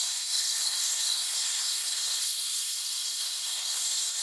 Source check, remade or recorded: remade